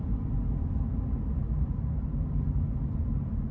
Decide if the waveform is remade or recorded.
recorded